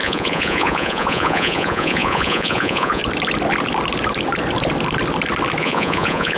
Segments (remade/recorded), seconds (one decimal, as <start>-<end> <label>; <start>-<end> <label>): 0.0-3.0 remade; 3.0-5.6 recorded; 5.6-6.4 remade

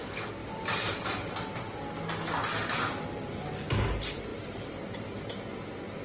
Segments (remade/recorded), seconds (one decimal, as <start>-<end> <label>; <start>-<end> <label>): 0.0-0.4 recorded; 0.4-1.3 remade; 1.3-4.3 recorded; 4.3-5.3 remade; 5.3-6.0 recorded

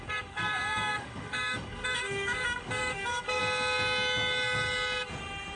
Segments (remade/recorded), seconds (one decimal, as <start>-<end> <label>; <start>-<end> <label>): 0.0-3.4 remade; 3.4-5.6 recorded

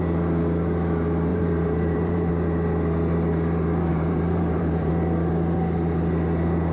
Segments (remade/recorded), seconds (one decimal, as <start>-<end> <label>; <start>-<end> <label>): 0.0-1.3 recorded; 1.3-2.3 remade; 2.3-3.9 recorded; 3.9-4.9 remade; 4.9-6.7 recorded